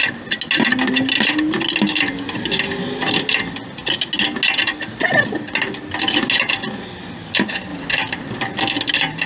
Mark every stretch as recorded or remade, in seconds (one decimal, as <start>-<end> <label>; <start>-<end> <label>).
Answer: 0.0-9.3 recorded